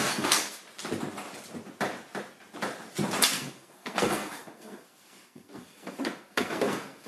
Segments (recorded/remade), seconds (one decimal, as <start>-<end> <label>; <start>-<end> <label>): 0.0-0.6 remade; 0.6-3.3 recorded; 3.3-7.1 remade